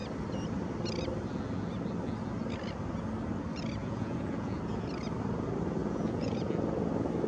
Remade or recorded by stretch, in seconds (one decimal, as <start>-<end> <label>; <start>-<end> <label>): 0.0-3.8 recorded; 3.8-4.6 remade; 4.6-5.8 recorded; 5.8-6.5 remade; 6.5-7.3 recorded